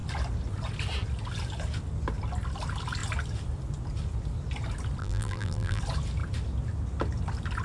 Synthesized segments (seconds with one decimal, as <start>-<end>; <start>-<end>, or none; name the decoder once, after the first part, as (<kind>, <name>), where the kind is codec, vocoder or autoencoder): 5.0-5.8 (vocoder, BigVGAN v2)